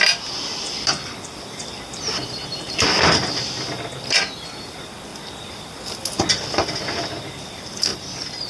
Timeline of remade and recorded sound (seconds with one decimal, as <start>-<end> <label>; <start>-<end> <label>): 0.0-0.5 recorded; 0.5-3.7 remade; 3.7-5.1 recorded; 5.1-5.8 remade; 5.8-8.5 recorded

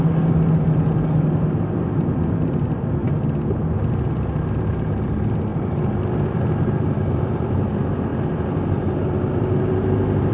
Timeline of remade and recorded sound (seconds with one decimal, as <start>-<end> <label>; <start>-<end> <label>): 0.0-5.5 recorded; 5.5-6.8 remade; 6.8-10.3 recorded

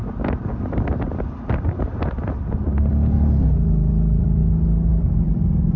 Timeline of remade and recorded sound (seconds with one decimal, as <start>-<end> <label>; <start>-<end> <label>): 0.0-2.9 remade; 2.9-3.9 recorded; 3.9-4.4 remade; 4.4-4.9 recorded; 4.9-5.8 remade

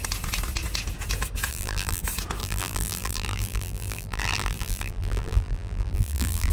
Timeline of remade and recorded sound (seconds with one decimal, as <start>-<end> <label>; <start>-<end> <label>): 0.0-1.5 recorded; 1.5-2.0 remade; 2.0-2.4 recorded; 2.4-6.5 remade

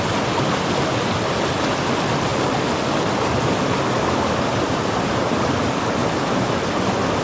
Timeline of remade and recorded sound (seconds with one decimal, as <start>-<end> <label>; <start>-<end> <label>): 0.0-5.1 recorded; 5.1-5.6 remade; 5.6-6.0 recorded; 6.0-6.7 remade; 6.7-7.2 recorded

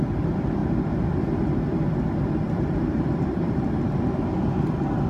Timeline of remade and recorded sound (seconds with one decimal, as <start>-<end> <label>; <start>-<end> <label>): 0.0-0.6 recorded; 0.6-3.7 remade; 3.7-5.1 recorded